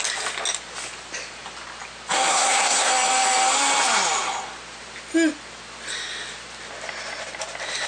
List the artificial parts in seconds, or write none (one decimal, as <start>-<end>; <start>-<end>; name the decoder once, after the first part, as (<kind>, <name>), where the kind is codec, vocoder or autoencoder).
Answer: 2.3-2.9 (codec, SNAC)